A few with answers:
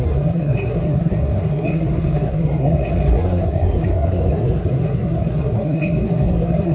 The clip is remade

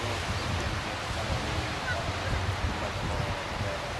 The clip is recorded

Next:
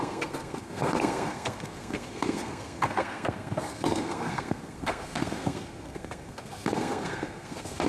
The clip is remade